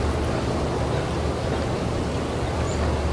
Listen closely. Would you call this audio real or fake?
real